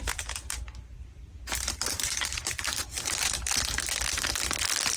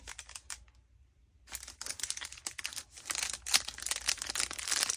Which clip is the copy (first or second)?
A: first